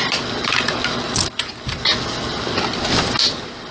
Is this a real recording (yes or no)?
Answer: yes